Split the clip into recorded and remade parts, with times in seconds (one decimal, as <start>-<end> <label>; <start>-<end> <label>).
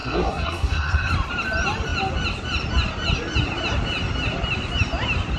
0.0-1.1 remade; 1.1-5.4 recorded